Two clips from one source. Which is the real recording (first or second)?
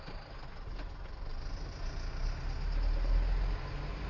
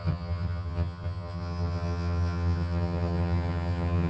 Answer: first